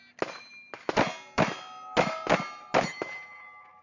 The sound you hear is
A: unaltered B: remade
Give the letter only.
A